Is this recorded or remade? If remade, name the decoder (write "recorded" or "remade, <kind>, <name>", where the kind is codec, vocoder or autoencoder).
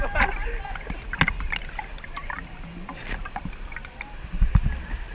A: recorded